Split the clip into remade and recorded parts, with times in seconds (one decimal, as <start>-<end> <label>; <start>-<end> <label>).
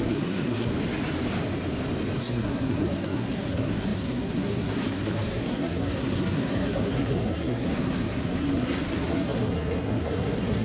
0.0-0.7 remade; 0.7-2.2 recorded; 2.2-10.6 remade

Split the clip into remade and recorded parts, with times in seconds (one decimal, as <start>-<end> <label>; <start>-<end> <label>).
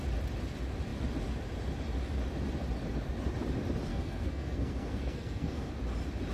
0.0-3.9 recorded; 3.9-5.7 remade; 5.7-6.3 recorded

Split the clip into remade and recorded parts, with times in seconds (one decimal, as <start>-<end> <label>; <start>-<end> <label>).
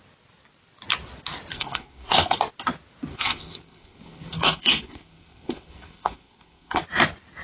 0.0-1.5 recorded; 1.5-2.4 remade; 2.4-3.1 recorded; 3.1-6.8 remade; 6.8-7.4 recorded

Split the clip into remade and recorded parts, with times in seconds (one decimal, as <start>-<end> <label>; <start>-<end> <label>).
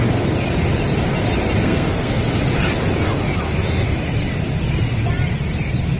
0.0-1.6 recorded; 1.6-2.2 remade; 2.2-6.0 recorded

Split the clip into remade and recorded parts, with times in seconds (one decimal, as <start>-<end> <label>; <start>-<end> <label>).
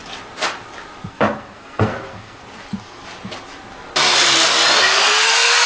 0.0-1.1 recorded; 1.1-2.4 remade; 2.4-4.8 recorded; 4.8-5.7 remade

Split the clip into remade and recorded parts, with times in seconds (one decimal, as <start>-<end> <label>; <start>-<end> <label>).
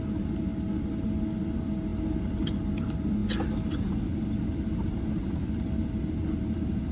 0.0-6.9 recorded